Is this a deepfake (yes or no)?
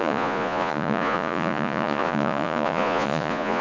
yes